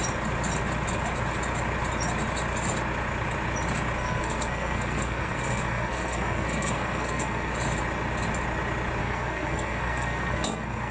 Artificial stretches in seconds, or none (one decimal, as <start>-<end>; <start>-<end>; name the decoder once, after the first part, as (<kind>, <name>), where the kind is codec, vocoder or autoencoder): 4.0-7.5 (codec, SNAC); 9.0-10.9